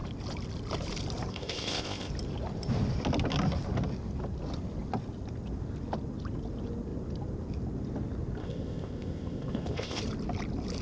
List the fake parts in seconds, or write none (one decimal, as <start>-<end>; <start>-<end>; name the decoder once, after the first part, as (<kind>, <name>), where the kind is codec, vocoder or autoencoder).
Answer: 1.3-2.1 (codec, ZipCodec); 8.4-10.0